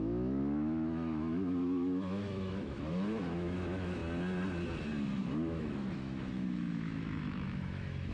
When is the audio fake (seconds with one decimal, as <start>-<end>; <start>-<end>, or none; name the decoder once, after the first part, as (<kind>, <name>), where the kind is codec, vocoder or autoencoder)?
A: 0.0-4.0 (autoencoder, DAC-VAE); 5.2-8.1